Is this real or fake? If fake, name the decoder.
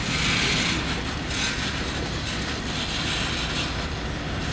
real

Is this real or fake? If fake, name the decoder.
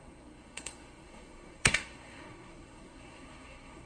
fake, codec, SNAC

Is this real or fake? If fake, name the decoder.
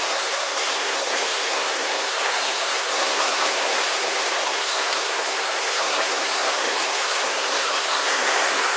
fake, codec, SNAC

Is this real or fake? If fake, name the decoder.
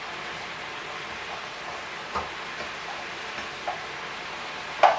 real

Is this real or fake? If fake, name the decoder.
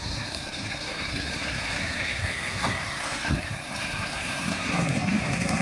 fake, codec, SNAC